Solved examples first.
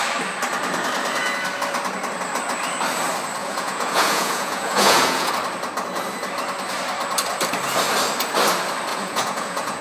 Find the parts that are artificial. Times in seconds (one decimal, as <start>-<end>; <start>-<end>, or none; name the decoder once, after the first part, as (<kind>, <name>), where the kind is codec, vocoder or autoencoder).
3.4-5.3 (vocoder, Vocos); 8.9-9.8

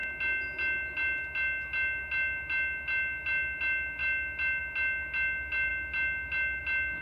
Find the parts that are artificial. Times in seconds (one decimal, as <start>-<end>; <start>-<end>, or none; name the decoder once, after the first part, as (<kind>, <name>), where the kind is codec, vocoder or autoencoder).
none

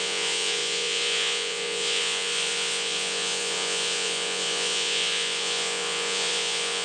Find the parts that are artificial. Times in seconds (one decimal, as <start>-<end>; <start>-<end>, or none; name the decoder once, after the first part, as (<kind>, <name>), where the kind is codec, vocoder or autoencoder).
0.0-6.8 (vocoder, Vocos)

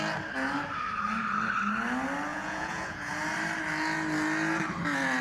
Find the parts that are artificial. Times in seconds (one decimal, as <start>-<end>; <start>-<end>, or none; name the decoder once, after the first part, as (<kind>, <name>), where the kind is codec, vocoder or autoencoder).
2.3-3.1 (vocoder, Vocos)

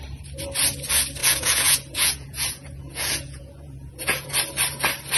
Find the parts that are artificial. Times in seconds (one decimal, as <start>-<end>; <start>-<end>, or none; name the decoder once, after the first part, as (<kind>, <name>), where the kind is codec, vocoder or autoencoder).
1.2-4.3 (vocoder, Vocos)

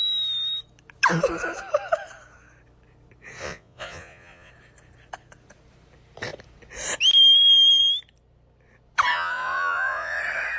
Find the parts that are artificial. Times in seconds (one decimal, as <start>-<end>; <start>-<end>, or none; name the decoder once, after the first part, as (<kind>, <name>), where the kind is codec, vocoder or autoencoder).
3.4-4.5 (vocoder, Vocos); 9.1-10.2

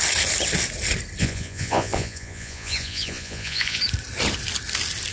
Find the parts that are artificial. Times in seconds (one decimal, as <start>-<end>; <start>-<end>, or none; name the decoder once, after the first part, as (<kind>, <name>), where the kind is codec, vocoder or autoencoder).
1.2-3.8 (vocoder, Vocos)